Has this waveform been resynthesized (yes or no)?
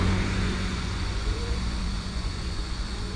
yes